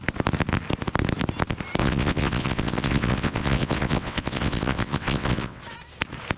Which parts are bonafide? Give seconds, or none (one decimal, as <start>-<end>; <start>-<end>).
0.0-1.8; 5.6-6.4